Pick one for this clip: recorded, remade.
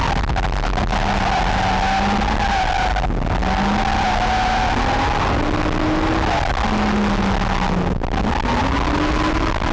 recorded